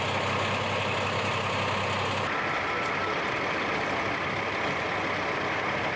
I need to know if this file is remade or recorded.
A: recorded